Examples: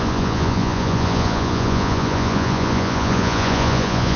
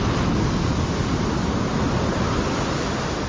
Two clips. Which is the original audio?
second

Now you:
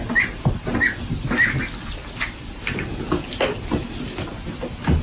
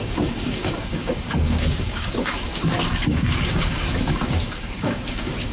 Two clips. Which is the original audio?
first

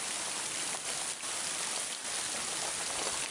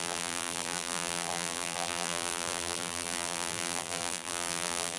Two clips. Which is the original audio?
first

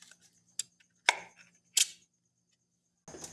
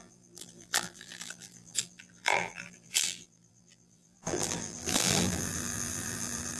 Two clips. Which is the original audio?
first